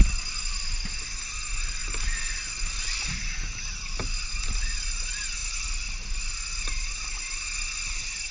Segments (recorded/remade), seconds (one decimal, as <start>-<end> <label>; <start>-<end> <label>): 0.0-8.3 recorded